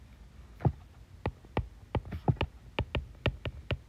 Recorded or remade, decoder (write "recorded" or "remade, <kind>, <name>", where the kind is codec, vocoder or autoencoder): recorded